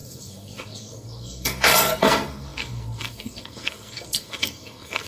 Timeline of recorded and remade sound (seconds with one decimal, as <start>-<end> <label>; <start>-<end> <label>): 0.0-5.1 remade